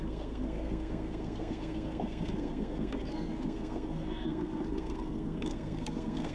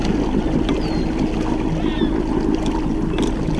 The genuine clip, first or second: second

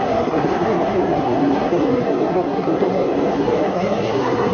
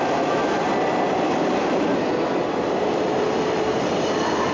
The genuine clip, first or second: second